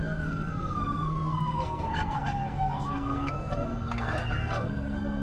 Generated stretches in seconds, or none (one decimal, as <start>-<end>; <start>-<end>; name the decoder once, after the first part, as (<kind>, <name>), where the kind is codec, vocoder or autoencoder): 0.0-5.2 (codec, SNAC)